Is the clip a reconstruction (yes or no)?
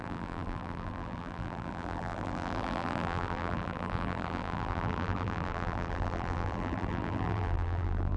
yes